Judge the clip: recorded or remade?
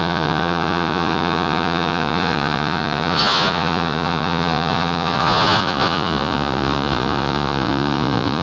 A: remade